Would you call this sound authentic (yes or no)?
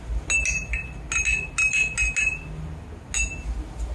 yes